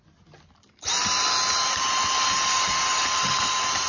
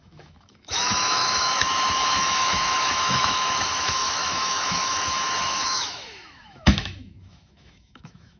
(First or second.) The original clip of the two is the first